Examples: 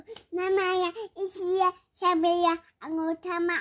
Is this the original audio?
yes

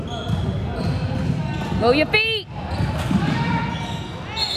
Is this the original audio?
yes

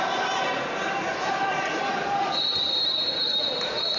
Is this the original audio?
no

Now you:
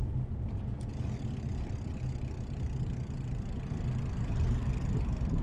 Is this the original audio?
yes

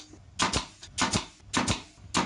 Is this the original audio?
yes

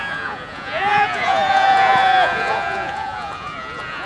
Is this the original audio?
no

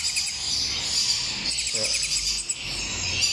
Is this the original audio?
yes